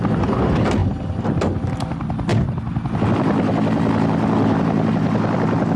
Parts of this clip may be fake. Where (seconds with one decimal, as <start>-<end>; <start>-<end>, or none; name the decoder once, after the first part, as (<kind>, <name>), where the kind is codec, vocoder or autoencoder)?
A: none